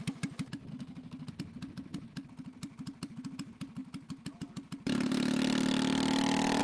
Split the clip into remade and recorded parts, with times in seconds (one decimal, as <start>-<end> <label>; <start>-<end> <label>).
0.0-0.7 recorded; 0.7-1.3 remade; 1.3-6.6 recorded